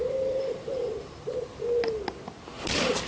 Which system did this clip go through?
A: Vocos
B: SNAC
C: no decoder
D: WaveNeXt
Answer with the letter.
C